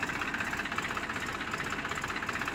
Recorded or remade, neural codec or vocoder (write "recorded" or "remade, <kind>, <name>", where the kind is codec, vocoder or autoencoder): recorded